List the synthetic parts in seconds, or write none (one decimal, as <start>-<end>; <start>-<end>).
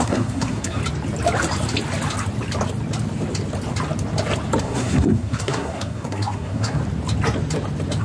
0.0-0.8; 4.6-6.8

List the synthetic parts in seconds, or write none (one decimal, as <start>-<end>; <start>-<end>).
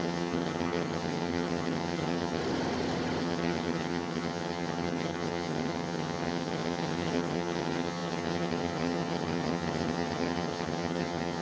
0.0-2.4; 3.2-11.4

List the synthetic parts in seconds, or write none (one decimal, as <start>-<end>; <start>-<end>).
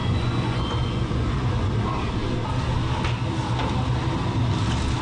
0.0-1.7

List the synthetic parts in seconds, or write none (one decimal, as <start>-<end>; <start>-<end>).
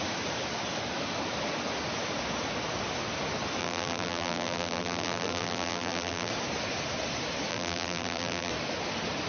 3.6-6.3; 7.5-8.5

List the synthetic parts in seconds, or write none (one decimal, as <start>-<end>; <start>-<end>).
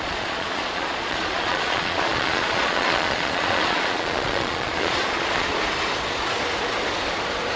0.0-5.5